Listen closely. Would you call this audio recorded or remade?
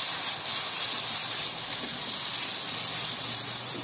recorded